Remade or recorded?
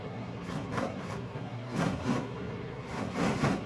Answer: remade